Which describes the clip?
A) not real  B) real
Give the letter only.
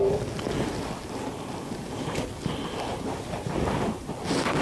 B